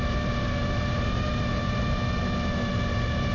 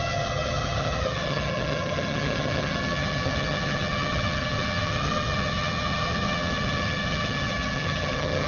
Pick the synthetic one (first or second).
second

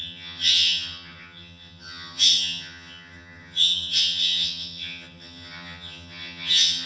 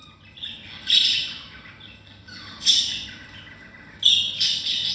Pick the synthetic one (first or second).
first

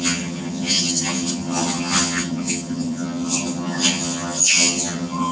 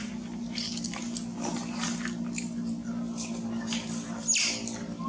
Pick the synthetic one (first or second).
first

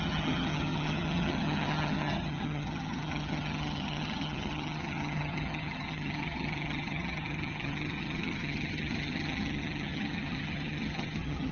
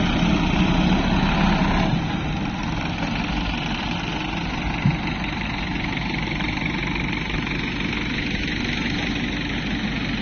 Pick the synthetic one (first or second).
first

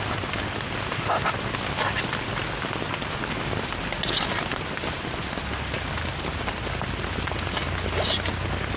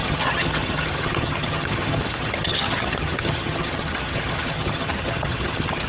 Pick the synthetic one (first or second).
second